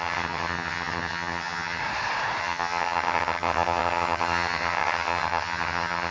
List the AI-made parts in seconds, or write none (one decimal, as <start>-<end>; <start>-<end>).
0.0-1.8; 2.4-6.1